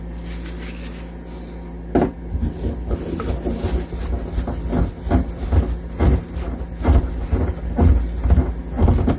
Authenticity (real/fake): real